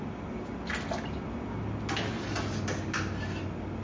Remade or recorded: recorded